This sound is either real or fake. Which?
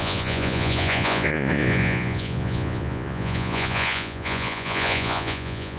fake